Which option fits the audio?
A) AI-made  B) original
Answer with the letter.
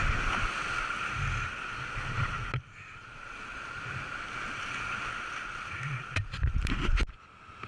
B